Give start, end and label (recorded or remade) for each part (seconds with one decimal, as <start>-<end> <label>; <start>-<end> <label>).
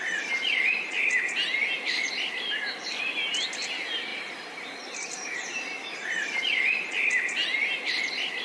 0.0-4.1 recorded; 4.1-6.4 remade; 6.4-8.4 recorded